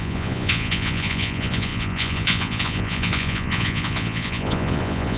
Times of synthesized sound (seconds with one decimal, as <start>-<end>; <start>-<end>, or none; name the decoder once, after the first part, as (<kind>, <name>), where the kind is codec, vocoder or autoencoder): 0.0-5.2 (vocoder, Vocos)